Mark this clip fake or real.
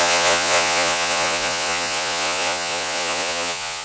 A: fake